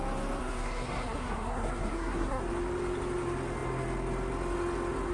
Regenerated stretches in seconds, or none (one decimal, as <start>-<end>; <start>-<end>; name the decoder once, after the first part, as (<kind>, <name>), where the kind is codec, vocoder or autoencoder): 0.4-2.4 (codec, SNAC)